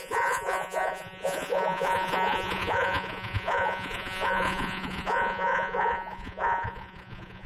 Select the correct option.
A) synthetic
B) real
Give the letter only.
A